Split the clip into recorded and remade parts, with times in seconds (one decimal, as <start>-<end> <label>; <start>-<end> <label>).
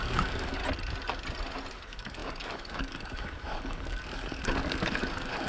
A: 0.0-0.6 remade; 0.6-1.7 recorded; 1.7-5.5 remade